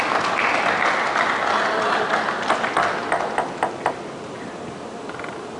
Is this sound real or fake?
real